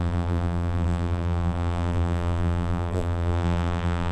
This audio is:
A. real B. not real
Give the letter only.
B